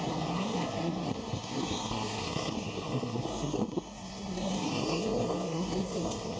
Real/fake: fake